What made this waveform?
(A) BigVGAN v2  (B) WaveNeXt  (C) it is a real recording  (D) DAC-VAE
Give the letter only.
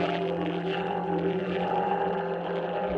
A